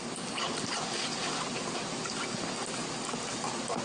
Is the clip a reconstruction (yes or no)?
no